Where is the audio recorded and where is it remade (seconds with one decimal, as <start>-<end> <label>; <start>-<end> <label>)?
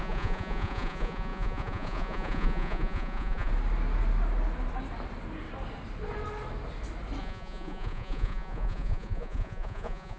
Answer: 0.0-3.5 remade; 3.5-7.2 recorded; 7.2-10.2 remade